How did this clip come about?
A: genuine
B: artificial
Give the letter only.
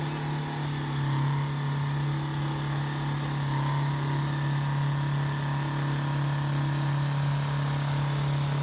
A